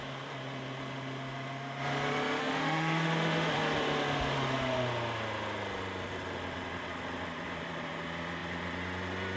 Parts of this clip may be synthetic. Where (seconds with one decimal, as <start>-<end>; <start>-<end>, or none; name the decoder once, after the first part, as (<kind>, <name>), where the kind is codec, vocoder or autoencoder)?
2.4-3.5 (autoencoder, DAC-VAE)